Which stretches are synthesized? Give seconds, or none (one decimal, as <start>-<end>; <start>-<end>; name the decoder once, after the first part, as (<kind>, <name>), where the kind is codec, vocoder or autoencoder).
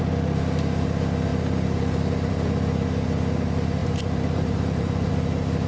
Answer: 3.8-5.1 (vocoder, BigVGAN v2)